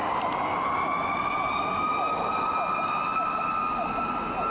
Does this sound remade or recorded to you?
recorded